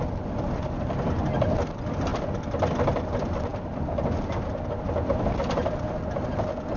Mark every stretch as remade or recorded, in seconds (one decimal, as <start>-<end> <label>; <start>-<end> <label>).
0.0-6.8 recorded